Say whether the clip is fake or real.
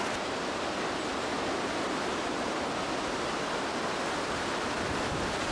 real